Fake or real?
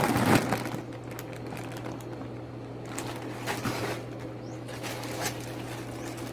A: real